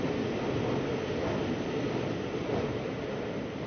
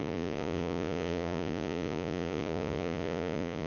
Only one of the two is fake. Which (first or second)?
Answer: second